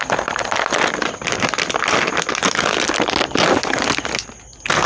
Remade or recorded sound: recorded